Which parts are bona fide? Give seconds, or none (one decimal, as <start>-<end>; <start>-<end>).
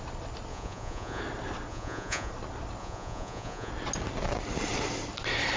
0.0-0.5; 1.2-1.7; 2.3-2.8; 3.7-5.6